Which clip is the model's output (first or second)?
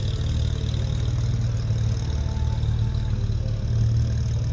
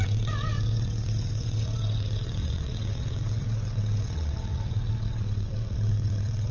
second